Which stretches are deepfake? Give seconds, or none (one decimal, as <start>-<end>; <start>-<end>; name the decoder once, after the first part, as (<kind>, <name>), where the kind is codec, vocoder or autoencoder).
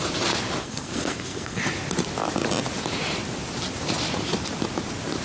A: 0.6-1.6 (codec, SNAC)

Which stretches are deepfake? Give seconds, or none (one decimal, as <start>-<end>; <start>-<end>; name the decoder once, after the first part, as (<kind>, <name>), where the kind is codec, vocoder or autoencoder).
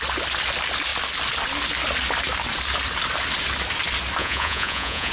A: 4.2-5.1 (vocoder, Vocos)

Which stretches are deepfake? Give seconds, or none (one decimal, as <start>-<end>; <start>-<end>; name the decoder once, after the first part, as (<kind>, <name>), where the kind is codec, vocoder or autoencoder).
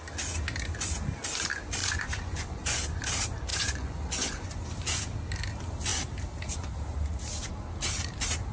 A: 1.8-3.0 (vocoder, Vocos); 3.5-4.6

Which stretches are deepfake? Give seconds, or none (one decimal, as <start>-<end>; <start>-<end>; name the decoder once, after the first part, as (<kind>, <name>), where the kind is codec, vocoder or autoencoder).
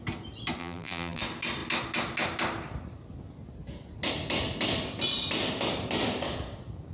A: 0.6-1.2 (vocoder, BigVGAN v2)